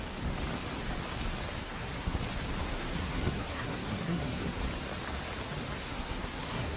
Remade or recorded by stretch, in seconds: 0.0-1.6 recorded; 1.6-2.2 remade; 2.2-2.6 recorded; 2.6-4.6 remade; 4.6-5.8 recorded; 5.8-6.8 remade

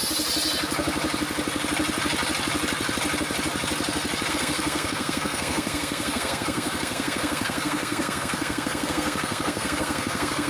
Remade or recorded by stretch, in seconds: 0.0-4.3 recorded; 4.3-10.5 remade

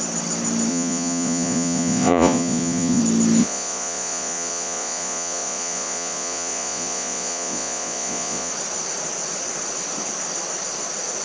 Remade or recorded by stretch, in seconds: 0.0-0.7 recorded; 0.7-3.0 remade; 3.0-3.4 recorded; 3.4-8.5 remade; 8.5-11.2 recorded

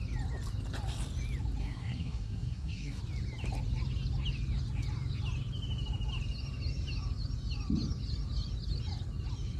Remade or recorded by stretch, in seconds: 0.0-1.6 recorded; 1.6-3.0 remade; 3.0-9.6 recorded

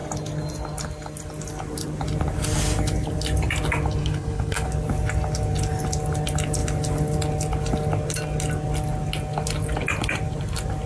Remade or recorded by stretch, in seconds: 0.0-4.0 recorded; 4.0-4.7 remade; 4.7-10.9 recorded

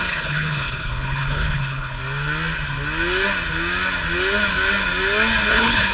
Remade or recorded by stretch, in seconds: 0.0-2.0 remade; 2.0-5.5 recorded; 5.5-5.9 remade

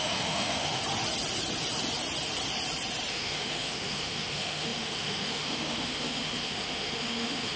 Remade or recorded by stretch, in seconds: 0.0-0.8 remade; 0.8-3.1 recorded; 3.1-7.6 remade